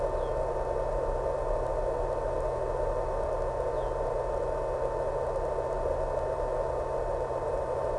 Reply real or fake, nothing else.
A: real